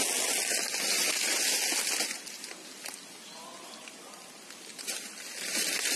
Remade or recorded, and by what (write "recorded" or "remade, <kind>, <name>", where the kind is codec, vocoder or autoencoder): recorded